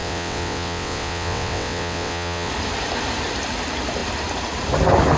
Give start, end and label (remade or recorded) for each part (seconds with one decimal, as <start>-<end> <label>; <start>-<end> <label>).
0.0-2.5 remade; 2.5-5.2 recorded